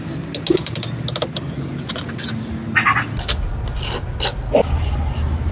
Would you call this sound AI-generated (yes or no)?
no